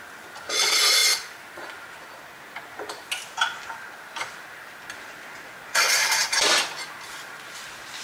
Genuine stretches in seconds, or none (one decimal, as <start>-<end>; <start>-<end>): 0.0-8.0